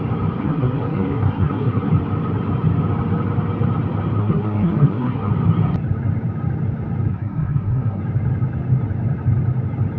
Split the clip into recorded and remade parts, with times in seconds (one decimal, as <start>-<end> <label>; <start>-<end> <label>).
0.0-0.4 recorded; 0.4-1.9 remade; 1.9-4.2 recorded; 4.2-5.3 remade; 5.3-7.1 recorded; 7.1-8.0 remade; 8.0-10.0 recorded